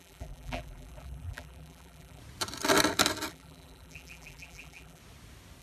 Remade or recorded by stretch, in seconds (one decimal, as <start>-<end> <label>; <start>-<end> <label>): 0.0-2.2 remade; 2.2-3.3 recorded; 3.3-5.0 remade; 5.0-5.6 recorded